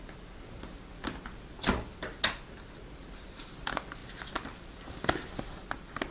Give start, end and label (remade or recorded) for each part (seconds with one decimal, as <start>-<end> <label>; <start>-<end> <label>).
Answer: 0.0-6.1 recorded